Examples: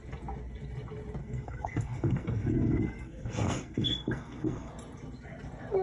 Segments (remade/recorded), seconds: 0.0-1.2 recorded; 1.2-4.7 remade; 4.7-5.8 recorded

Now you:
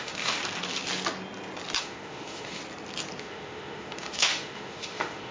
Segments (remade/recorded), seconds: 0.0-0.4 remade; 0.4-1.8 recorded; 1.8-2.6 remade; 2.6-3.2 recorded; 3.2-5.3 remade

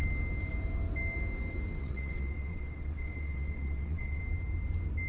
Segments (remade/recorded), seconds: 0.0-1.8 recorded; 1.8-4.2 remade; 4.2-5.1 recorded